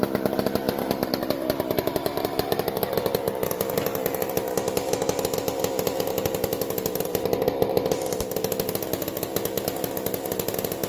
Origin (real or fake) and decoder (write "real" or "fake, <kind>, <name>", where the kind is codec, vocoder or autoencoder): real